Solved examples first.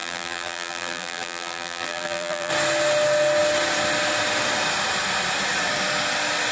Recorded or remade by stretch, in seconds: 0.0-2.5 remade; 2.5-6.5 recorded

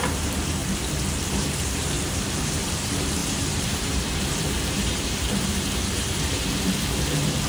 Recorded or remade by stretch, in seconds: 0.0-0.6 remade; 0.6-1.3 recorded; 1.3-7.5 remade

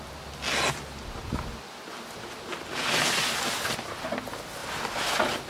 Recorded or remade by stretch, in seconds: 0.0-5.5 recorded

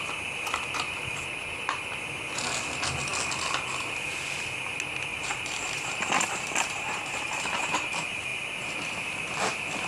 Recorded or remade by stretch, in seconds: 0.0-5.1 recorded; 5.1-7.9 remade; 7.9-9.9 recorded